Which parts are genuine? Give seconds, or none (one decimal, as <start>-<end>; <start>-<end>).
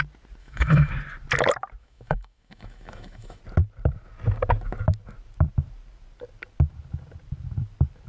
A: 0.0-0.4; 0.9-1.8; 3.4-8.1